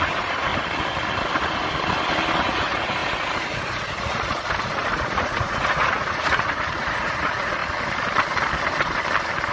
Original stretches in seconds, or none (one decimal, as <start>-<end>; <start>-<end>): 0.5-2.4; 7.6-9.5